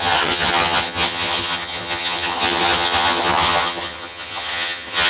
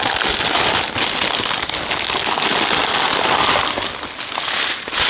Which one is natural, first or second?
second